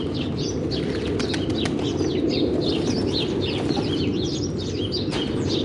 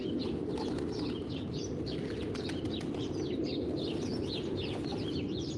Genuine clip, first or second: first